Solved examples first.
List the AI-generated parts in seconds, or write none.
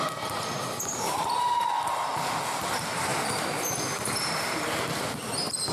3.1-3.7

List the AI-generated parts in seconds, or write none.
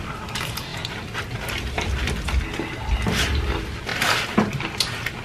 none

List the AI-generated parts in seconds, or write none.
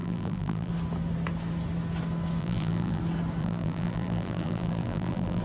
0.0-0.7; 2.4-3.0; 3.4-5.4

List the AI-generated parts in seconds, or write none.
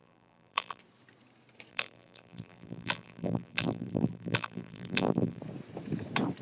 0.0-0.8; 1.7-5.4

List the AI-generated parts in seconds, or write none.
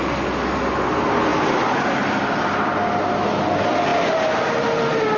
none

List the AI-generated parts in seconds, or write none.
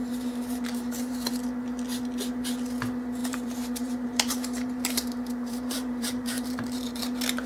0.0-1.3; 3.2-7.0